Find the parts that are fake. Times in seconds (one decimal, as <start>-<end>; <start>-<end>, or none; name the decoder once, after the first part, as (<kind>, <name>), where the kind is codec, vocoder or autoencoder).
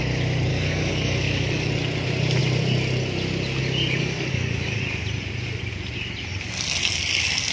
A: 0.5-1.7 (codec, DAC); 4.0-4.8